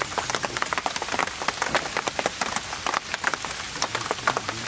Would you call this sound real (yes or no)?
yes